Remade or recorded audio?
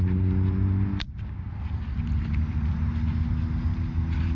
recorded